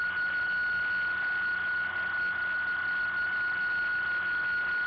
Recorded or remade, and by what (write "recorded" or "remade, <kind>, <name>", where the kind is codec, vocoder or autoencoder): recorded